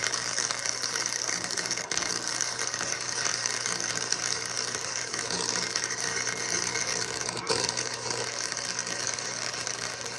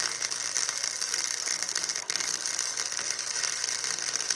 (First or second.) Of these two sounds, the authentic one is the second